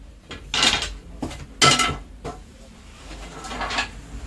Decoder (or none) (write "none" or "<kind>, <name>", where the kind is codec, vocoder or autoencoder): none